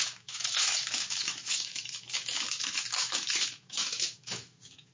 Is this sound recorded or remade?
remade